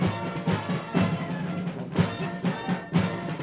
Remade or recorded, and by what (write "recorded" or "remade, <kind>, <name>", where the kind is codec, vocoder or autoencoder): recorded